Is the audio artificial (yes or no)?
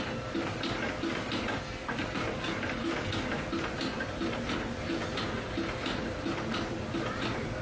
no